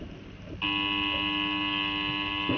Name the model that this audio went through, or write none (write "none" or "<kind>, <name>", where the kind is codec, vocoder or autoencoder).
none